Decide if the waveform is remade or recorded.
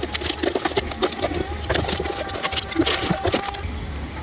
recorded